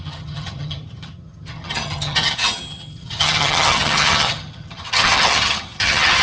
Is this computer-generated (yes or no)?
yes